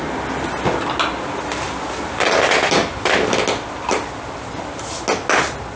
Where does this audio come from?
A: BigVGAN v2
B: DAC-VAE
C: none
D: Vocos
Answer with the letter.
C